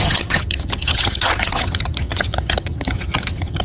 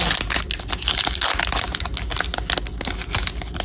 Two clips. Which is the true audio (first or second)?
second